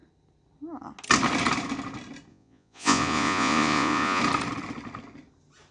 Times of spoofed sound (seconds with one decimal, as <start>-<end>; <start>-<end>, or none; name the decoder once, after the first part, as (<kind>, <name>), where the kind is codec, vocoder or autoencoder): 2.3-4.2 (vocoder, Vocos)